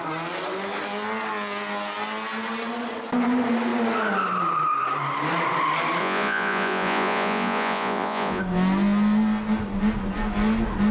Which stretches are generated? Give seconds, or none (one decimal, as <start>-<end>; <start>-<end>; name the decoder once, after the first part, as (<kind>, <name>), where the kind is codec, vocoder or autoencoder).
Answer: 6.0-8.4 (vocoder, Vocos)